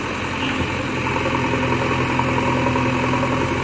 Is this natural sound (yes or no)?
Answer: yes